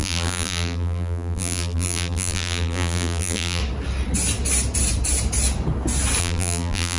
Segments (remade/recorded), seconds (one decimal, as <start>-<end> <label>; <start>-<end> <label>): 0.0-3.6 remade; 3.6-6.2 recorded; 6.2-7.0 remade